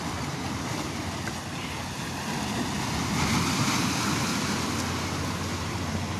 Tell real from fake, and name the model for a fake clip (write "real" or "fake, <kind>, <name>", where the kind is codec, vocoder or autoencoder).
real